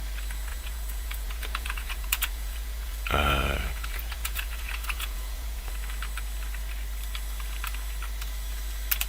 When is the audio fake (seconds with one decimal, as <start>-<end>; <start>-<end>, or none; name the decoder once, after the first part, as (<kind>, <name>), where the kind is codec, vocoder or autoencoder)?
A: 0.5-5.7 (vocoder, Vocos)